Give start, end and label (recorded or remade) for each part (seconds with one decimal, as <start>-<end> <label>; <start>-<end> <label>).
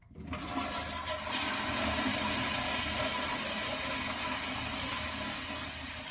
0.0-6.1 recorded